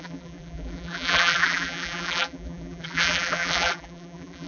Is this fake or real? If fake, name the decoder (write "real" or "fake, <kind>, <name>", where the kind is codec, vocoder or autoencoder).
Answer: fake, vocoder, BigVGAN v2